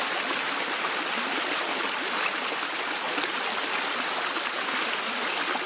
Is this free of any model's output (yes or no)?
yes